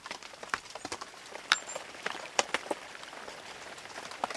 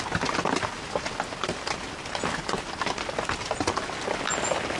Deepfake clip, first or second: first